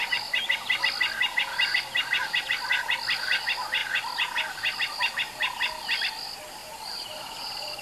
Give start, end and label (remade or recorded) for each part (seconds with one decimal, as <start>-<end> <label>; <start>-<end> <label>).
0.0-6.6 recorded; 6.6-7.8 remade

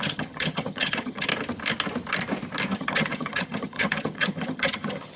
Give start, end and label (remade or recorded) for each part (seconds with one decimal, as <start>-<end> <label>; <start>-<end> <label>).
0.0-1.3 remade; 1.3-2.7 recorded; 2.7-5.2 remade